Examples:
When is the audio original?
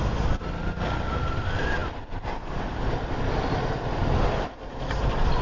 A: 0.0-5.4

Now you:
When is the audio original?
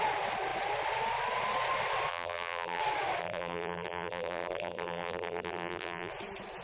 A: 0.0-2.1; 2.8-3.2; 6.1-6.6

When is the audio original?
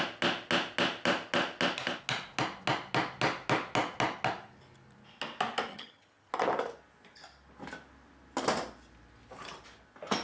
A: 0.0-5.7; 6.3-10.2